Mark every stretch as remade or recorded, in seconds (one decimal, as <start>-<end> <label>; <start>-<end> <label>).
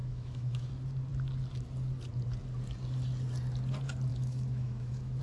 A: 0.0-0.7 remade; 0.7-4.1 recorded; 4.1-5.2 remade